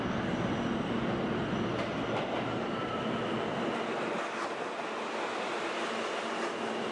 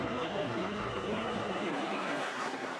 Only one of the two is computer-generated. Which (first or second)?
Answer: second